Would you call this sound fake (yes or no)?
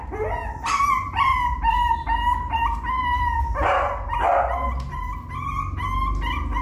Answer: no